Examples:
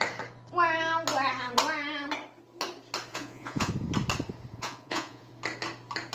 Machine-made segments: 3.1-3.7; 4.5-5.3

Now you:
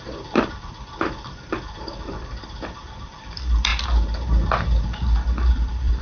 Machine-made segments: 0.0-3.7; 5.5-6.0

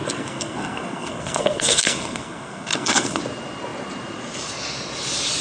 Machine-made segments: 0.0-3.2